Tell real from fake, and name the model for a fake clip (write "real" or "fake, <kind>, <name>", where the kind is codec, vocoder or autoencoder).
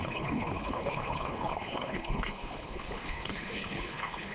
fake, codec, HILCodec